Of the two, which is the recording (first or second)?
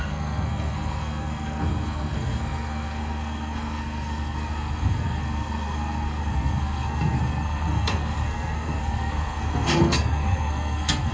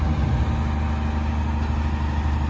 second